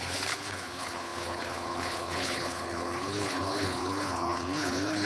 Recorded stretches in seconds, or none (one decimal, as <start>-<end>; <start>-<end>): none